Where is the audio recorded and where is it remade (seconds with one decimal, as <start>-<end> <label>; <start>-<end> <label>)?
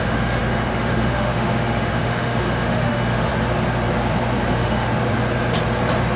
0.0-3.3 remade; 3.3-4.5 recorded; 4.5-4.9 remade; 4.9-6.2 recorded